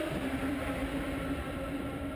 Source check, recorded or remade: remade